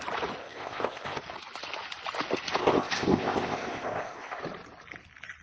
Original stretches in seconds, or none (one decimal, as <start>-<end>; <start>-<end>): 0.0-0.4; 1.2-2.6; 4.4-5.4